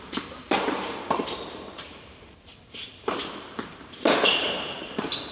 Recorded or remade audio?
remade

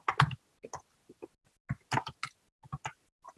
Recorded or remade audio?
recorded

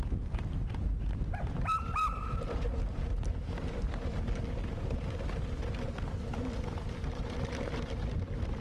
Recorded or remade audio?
recorded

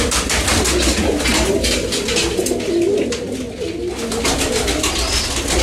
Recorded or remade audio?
recorded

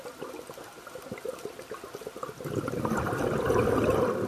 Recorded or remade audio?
recorded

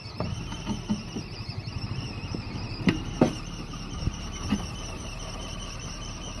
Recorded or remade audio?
remade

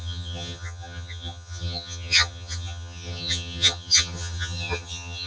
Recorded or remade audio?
remade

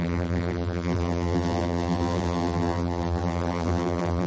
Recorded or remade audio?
remade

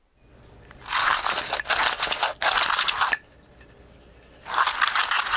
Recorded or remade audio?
recorded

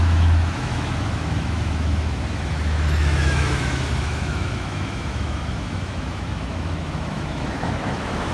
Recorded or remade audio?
remade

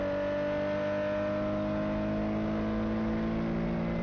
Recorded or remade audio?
recorded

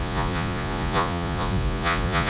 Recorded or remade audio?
remade